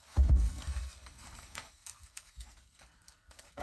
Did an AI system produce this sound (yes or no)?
yes